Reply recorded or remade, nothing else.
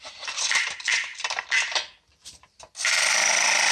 recorded